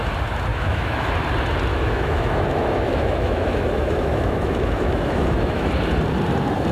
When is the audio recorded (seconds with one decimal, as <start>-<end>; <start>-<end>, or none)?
0.0-0.5; 1.1-1.7; 5.7-6.7